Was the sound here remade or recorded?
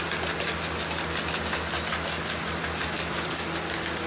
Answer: recorded